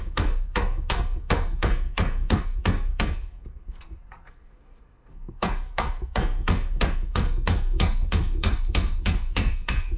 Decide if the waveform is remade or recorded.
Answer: remade